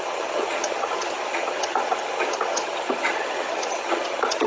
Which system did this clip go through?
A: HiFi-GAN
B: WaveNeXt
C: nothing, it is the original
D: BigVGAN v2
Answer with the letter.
A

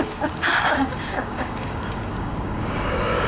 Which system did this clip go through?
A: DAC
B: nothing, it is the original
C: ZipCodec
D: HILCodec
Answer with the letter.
A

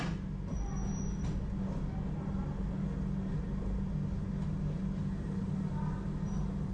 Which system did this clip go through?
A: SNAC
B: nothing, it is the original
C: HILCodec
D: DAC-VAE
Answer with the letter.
B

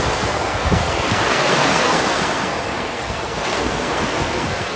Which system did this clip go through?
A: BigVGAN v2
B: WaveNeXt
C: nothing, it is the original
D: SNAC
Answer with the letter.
D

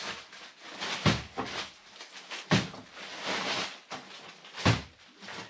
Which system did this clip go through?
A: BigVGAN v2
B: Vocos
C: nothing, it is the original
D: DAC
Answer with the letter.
C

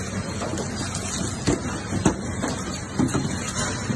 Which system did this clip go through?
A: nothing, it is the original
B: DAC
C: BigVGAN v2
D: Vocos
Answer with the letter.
A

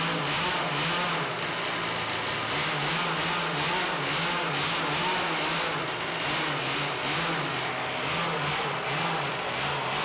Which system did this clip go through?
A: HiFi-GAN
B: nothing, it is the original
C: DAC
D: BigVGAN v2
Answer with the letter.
B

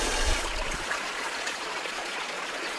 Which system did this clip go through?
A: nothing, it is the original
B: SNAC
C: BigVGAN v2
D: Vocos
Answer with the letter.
D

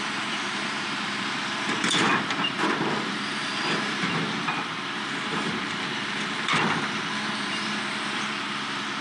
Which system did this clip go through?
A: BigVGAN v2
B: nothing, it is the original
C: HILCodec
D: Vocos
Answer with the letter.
A